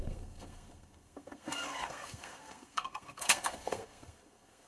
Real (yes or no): no